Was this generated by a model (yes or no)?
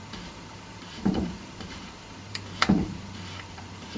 yes